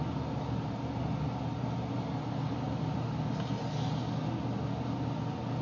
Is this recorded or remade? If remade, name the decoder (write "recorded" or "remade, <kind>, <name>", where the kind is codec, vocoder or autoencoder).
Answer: recorded